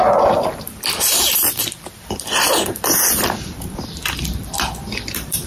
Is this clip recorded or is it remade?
remade